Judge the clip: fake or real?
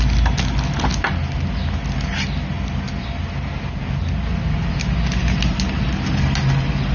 real